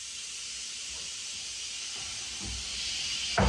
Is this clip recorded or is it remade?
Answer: recorded